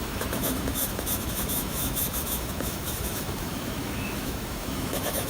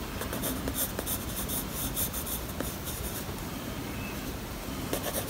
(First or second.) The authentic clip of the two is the second